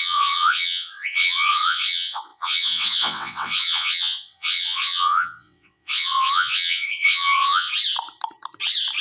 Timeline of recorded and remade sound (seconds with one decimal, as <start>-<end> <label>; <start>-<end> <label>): 0.0-7.7 remade; 7.7-9.0 recorded